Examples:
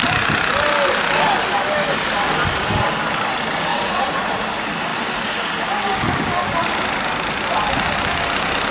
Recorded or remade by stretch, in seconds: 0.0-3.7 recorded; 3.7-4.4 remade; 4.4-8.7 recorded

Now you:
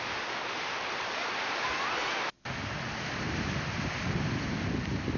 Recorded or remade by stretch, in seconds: 0.0-5.2 recorded

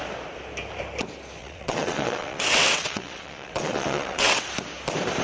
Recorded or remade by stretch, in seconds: 0.0-1.4 recorded; 1.4-4.5 remade; 4.5-5.2 recorded

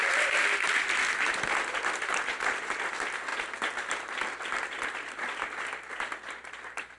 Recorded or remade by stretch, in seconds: 0.0-0.7 remade; 0.7-3.3 recorded; 3.3-5.9 remade; 5.9-7.0 recorded

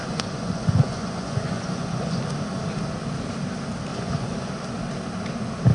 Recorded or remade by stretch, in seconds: 0.0-2.2 remade; 2.2-3.9 recorded; 3.9-4.5 remade; 4.5-5.7 recorded

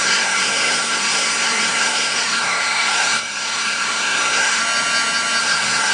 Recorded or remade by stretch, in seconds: 0.0-4.6 remade; 4.6-5.4 recorded; 5.4-5.9 remade

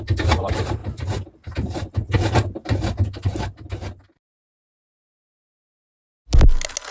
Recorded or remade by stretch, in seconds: 0.0-6.9 recorded